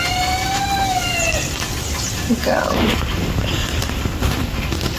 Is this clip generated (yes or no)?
no